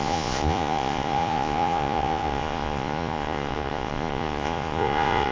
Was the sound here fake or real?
fake